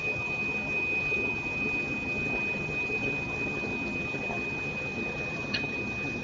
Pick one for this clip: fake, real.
fake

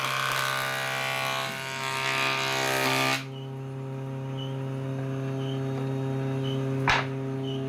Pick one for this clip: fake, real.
real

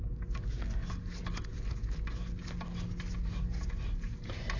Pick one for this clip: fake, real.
real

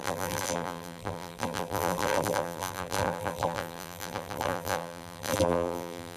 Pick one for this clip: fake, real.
fake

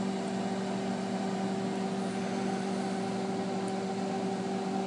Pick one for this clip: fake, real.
real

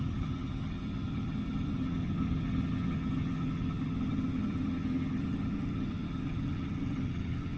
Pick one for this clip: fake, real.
fake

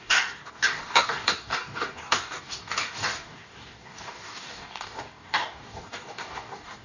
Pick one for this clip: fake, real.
fake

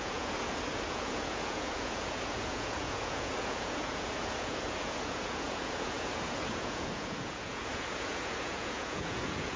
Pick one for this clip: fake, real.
fake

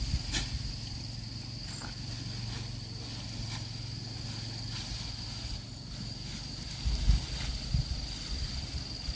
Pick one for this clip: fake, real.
real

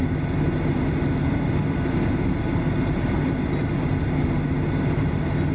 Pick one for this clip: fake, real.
real